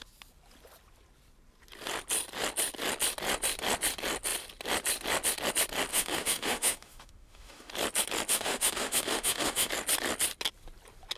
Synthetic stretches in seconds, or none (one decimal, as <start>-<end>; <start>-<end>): 5.9-7.7; 8.3-9.7